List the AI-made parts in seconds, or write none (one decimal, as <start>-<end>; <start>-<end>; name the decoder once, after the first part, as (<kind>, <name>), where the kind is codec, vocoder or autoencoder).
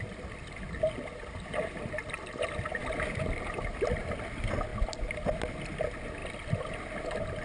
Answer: none